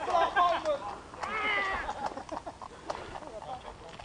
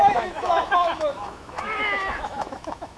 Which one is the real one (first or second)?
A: first